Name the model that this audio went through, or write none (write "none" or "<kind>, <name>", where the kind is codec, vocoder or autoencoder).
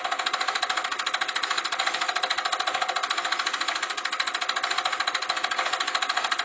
none